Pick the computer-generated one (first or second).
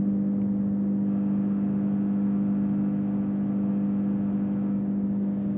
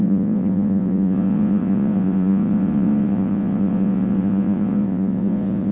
second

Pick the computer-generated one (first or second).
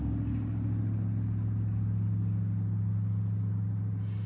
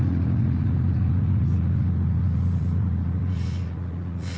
second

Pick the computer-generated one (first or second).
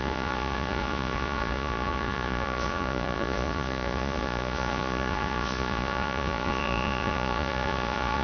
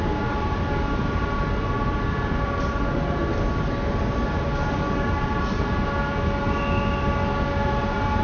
first